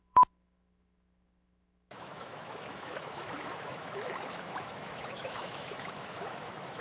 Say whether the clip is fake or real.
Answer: fake